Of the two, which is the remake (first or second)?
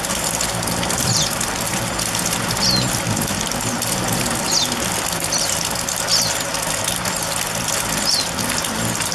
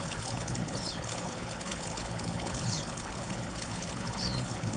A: second